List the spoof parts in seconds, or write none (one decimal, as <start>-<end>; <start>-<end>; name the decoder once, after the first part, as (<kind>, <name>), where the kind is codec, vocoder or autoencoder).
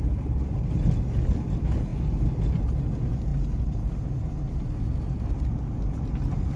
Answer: none